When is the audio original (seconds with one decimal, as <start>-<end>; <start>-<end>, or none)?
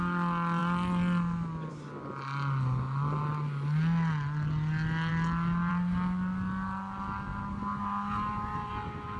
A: 0.0-9.2